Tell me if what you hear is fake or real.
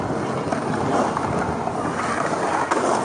real